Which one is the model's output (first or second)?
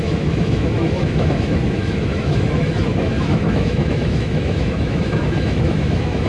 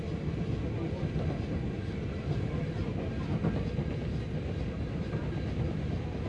first